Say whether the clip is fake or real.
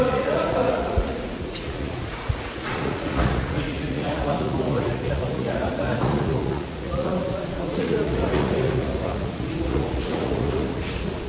fake